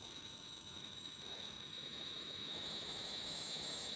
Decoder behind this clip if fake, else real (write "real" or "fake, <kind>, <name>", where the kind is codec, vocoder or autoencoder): fake, autoencoder, DAC-VAE